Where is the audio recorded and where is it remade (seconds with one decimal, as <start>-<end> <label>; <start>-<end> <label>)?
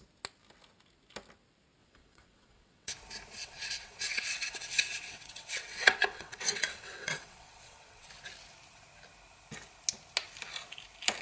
0.0-1.8 recorded; 1.8-2.9 remade; 2.9-3.4 recorded; 3.4-8.1 remade; 8.1-11.2 recorded